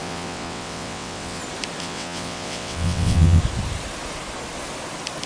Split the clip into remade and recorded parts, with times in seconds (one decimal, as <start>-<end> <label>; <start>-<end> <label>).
0.0-1.4 remade; 1.4-1.8 recorded; 1.8-3.4 remade; 3.4-5.3 recorded